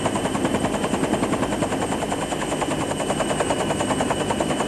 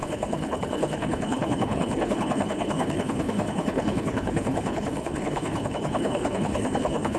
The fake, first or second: second